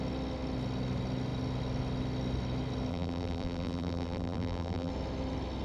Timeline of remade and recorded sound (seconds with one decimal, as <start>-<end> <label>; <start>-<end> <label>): 0.0-2.9 recorded; 2.9-4.9 remade; 4.9-5.6 recorded